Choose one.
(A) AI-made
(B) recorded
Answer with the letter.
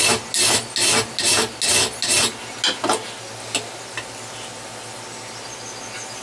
B